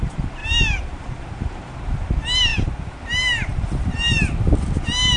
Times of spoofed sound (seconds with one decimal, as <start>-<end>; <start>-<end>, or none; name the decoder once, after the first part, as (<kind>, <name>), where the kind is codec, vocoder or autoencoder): 0.4-1.6 (vocoder, BigVGAN v2); 2.5-3.0; 3.5-4.2